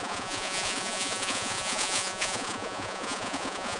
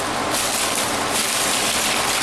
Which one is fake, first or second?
first